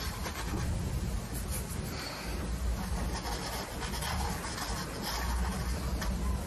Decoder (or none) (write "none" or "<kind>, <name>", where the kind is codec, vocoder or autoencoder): none